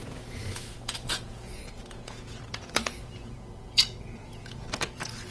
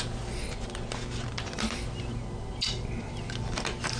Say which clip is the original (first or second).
second